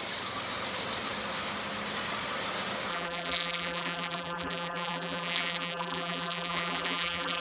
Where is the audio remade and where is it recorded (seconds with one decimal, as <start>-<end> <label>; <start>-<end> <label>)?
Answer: 0.0-2.9 recorded; 2.9-7.4 remade